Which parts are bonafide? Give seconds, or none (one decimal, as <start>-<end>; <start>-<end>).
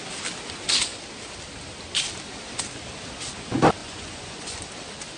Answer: 0.0-3.8; 4.6-5.2